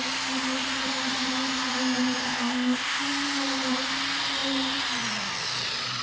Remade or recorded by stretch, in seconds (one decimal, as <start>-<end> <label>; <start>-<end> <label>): 0.0-2.2 recorded; 2.2-3.0 remade; 3.0-6.0 recorded